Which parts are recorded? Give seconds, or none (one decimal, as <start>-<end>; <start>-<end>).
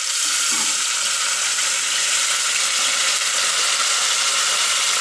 0.0-5.0